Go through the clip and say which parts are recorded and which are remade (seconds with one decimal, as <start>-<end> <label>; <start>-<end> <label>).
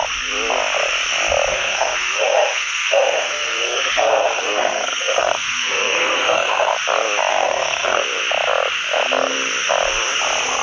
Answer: 0.0-1.5 recorded; 1.5-6.7 remade; 6.7-7.3 recorded; 7.3-8.0 remade; 8.0-10.6 recorded